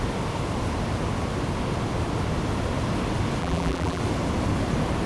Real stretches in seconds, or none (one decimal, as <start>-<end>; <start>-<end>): 0.0-3.4; 4.0-5.1